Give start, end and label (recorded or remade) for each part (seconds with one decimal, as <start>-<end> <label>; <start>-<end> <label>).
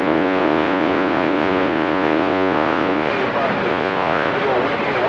0.0-3.1 remade; 3.1-3.7 recorded; 3.7-4.3 remade; 4.3-5.1 recorded